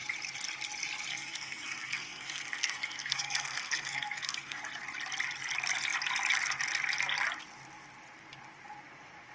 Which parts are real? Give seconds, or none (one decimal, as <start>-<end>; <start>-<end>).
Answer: 0.0-1.1; 4.6-9.3